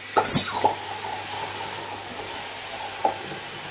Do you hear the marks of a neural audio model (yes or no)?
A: no